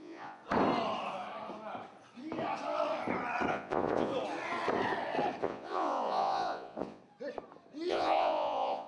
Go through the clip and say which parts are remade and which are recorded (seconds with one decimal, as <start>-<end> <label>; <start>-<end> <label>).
0.0-0.4 remade; 0.4-3.5 recorded; 3.5-4.1 remade; 4.1-5.4 recorded; 5.4-7.0 remade; 7.0-7.9 recorded; 7.9-8.9 remade

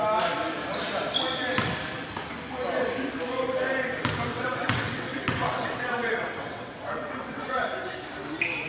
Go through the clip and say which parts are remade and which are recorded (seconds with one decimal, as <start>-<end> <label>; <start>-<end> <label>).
0.0-4.3 recorded; 4.3-7.7 remade; 7.7-8.7 recorded

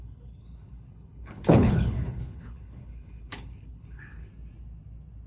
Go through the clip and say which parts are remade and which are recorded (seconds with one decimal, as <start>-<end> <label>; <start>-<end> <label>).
0.0-4.3 remade; 4.3-5.3 recorded

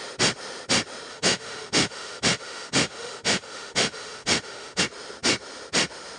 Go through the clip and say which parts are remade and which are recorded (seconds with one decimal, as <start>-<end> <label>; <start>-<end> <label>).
0.0-1.1 recorded; 1.1-4.8 remade; 4.8-6.2 recorded

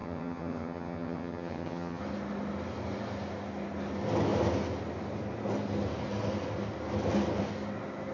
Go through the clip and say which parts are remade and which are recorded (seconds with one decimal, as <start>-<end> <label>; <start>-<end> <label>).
0.0-2.0 remade; 2.0-8.1 recorded

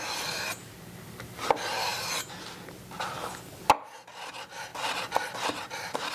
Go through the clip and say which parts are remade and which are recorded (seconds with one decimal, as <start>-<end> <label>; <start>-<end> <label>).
0.0-6.1 recorded

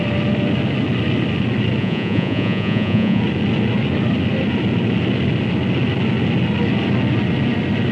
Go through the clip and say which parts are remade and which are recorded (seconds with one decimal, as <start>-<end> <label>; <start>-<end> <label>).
0.0-1.8 recorded; 1.8-3.2 remade; 3.2-7.9 recorded